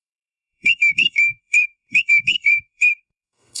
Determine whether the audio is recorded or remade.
remade